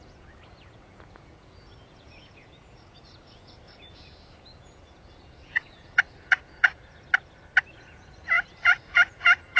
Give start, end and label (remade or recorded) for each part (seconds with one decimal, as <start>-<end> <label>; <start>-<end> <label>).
0.0-6.8 remade; 6.8-7.7 recorded; 7.7-9.6 remade